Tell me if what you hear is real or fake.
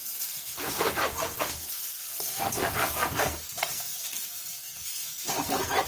fake